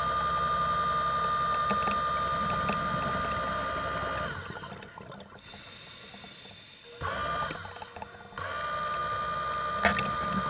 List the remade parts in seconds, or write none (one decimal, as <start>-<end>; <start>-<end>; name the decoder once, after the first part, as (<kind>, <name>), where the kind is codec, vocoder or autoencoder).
none